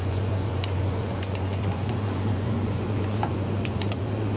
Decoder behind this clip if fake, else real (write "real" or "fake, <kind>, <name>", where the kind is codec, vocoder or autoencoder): fake, vocoder, Vocos